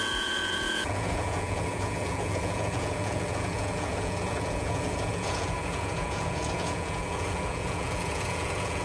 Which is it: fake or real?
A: fake